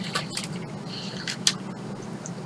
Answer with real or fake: real